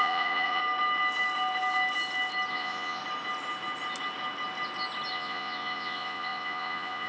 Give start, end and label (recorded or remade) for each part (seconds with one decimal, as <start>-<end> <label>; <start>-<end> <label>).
0.0-0.6 remade; 0.6-2.5 recorded; 2.5-3.0 remade; 3.0-5.1 recorded; 5.1-7.1 remade